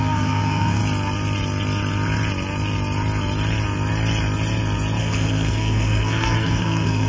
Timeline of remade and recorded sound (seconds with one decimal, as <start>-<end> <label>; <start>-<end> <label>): 0.0-0.8 remade; 0.8-5.0 recorded; 5.0-7.1 remade